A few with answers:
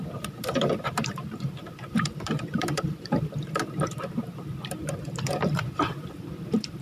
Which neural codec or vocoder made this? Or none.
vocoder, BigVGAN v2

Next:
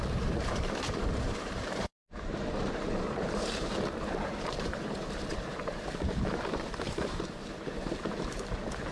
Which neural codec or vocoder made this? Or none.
vocoder, BigVGAN v2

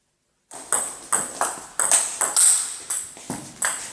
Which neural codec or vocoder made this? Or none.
none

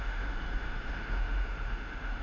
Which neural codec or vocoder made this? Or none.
autoencoder, DAC-VAE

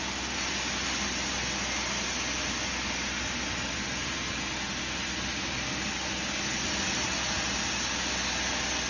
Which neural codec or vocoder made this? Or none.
none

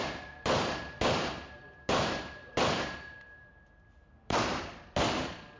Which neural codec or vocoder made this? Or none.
vocoder, BigVGAN v2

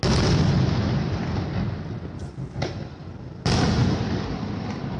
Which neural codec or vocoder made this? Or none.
none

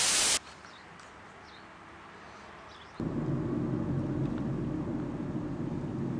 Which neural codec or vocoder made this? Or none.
none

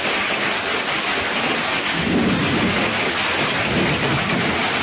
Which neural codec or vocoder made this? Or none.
none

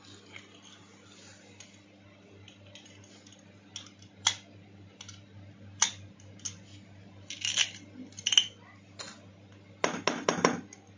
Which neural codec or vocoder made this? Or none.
none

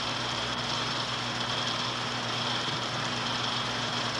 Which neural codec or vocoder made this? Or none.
vocoder, BigVGAN v2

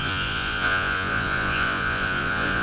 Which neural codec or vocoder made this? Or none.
vocoder, Vocos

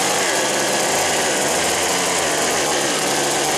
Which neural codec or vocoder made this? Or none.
none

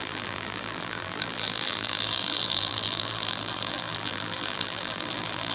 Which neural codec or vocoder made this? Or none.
vocoder, BigVGAN v2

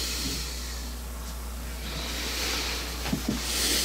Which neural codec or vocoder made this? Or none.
none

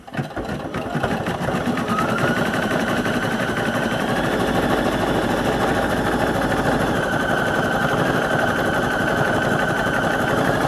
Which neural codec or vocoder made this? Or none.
vocoder, BigVGAN v2